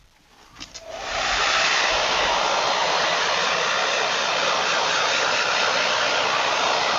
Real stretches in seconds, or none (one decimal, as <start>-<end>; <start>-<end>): 0.0-2.8; 3.3-7.0